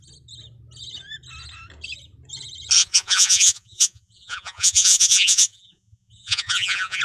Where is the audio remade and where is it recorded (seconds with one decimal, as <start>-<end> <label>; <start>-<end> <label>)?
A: 0.0-2.8 recorded; 2.8-7.0 remade